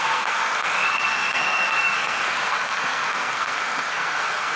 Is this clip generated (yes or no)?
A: yes